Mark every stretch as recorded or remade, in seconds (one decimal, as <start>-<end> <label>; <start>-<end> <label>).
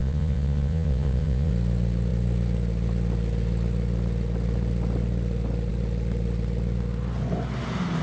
0.0-1.5 remade; 1.5-8.0 recorded